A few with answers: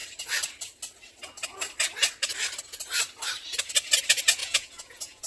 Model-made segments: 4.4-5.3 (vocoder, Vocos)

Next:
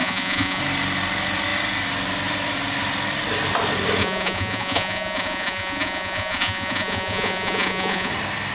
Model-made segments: 0.0-0.6 (vocoder, Vocos); 4.0-8.1